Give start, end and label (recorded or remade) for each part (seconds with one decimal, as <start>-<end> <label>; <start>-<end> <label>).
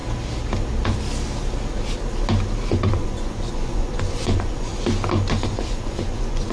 0.0-2.7 recorded; 2.7-4.7 remade; 4.7-5.4 recorded; 5.4-6.5 remade